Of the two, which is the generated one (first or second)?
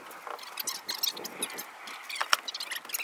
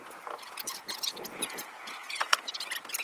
second